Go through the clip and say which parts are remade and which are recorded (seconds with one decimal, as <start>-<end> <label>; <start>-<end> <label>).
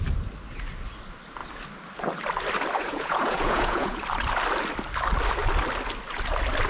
0.0-2.8 recorded; 2.8-4.0 remade; 4.0-6.7 recorded